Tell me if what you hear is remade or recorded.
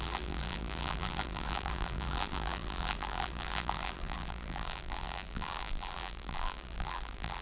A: remade